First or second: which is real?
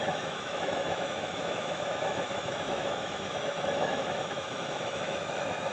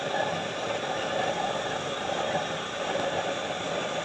second